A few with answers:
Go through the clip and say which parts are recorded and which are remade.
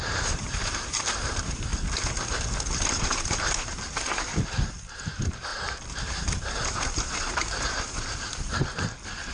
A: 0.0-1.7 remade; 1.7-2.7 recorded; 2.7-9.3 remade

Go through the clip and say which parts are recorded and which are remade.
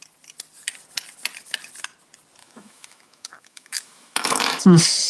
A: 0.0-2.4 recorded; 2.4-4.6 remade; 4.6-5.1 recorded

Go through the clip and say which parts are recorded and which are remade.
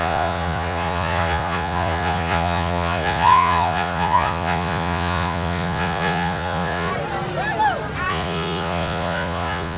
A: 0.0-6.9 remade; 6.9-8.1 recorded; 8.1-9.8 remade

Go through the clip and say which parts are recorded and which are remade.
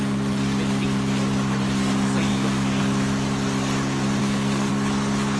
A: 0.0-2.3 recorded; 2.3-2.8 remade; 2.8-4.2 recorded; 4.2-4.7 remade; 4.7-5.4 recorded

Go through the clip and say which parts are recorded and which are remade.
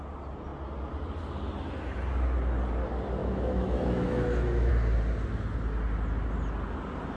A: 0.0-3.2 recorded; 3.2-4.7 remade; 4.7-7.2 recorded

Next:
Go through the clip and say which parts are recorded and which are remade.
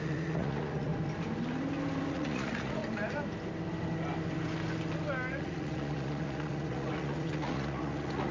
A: 0.0-0.9 remade; 0.9-2.1 recorded; 2.1-2.8 remade; 2.8-5.3 recorded; 5.3-8.3 remade